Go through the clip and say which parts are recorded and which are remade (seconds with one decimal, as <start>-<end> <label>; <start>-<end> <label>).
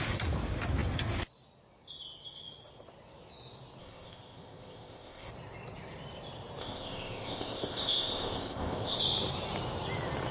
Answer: 0.0-3.8 recorded; 3.8-5.3 remade; 5.3-6.6 recorded; 6.6-9.0 remade; 9.0-10.3 recorded